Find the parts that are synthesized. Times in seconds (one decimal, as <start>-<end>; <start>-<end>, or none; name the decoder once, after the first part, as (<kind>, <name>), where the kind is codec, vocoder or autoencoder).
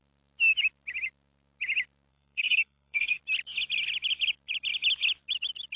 2.1-3.2 (codec, SNAC)